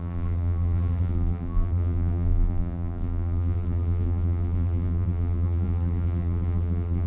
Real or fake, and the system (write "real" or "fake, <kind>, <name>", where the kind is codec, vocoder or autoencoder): fake, vocoder, BigVGAN v2